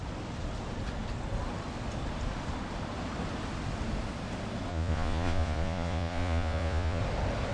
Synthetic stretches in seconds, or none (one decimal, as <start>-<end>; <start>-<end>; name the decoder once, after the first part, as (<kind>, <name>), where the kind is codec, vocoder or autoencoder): 4.7-7.0 (vocoder, Vocos)

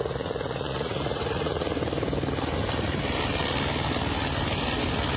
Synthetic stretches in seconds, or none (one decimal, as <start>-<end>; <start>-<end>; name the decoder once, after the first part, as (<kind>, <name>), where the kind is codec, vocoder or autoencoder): 0.0-1.8 (vocoder, Vocos)

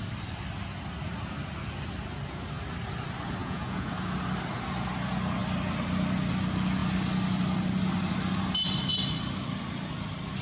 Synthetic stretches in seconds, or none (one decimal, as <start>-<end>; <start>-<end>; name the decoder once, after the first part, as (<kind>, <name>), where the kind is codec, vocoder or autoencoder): 3.4-3.9 (vocoder, Vocos)

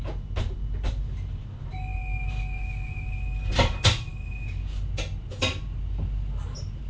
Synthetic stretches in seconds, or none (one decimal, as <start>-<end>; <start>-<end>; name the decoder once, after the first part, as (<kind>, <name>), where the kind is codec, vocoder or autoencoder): none